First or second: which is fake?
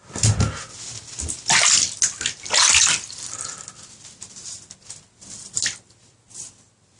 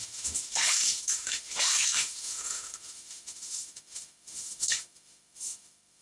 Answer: second